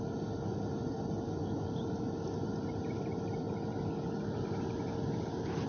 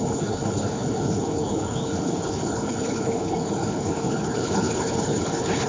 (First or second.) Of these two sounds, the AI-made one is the second